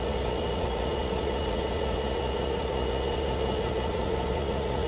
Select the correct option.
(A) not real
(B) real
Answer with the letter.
A